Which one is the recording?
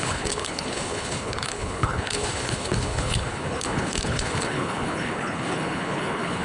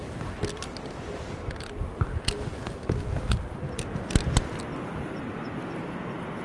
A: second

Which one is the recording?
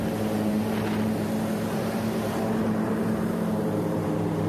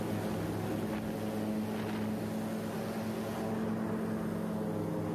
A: second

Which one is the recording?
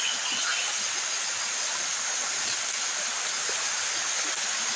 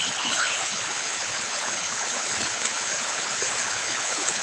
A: first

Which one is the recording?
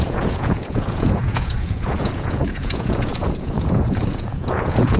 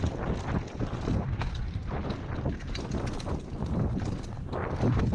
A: second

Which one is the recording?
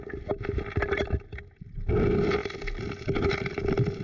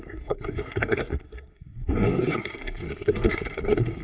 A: first